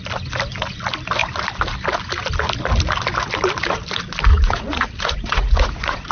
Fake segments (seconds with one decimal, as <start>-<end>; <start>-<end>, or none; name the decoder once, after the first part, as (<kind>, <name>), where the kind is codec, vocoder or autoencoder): 4.3-6.1 (vocoder, Vocos)